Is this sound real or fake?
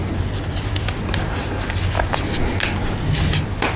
real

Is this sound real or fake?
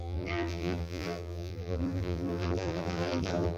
fake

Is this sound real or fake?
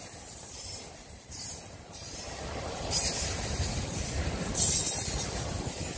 fake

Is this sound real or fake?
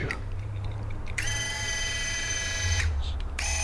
fake